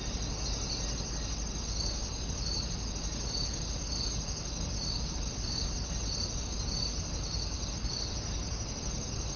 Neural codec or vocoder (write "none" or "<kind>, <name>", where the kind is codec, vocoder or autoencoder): none